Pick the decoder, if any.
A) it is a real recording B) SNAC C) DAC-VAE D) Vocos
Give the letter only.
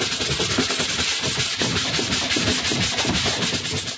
A